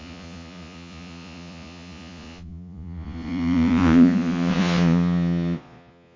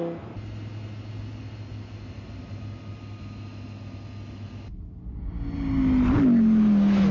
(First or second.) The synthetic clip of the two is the first